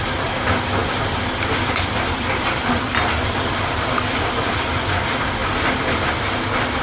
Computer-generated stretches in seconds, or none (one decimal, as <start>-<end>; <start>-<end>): 0.0-5.4